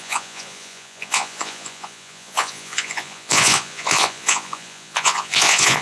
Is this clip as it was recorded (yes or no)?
no